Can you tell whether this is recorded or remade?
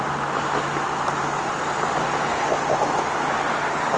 recorded